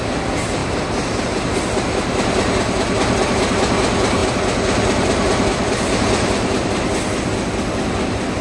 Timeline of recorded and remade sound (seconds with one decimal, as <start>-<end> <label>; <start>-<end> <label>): 0.0-4.2 recorded; 4.2-8.4 remade